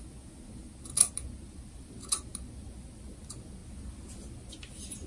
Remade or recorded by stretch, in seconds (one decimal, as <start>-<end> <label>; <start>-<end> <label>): 0.0-5.1 recorded